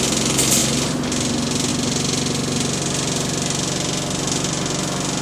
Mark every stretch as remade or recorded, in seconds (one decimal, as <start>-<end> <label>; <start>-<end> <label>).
0.0-5.2 recorded